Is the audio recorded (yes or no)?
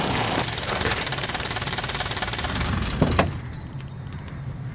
no